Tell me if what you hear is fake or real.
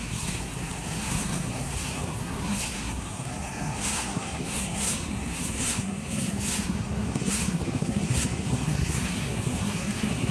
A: fake